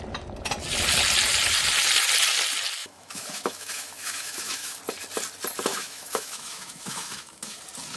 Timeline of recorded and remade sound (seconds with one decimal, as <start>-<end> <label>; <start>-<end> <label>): 0.0-2.8 recorded; 2.8-4.8 remade; 4.8-5.7 recorded; 5.7-7.6 remade; 7.6-8.0 recorded